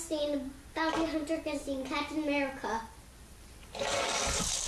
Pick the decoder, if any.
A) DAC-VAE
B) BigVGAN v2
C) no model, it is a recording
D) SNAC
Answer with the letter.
C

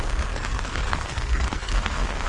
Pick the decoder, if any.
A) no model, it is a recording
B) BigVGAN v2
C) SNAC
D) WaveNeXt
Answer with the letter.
C